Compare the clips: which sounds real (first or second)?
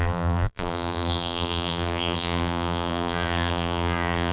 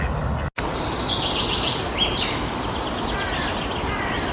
second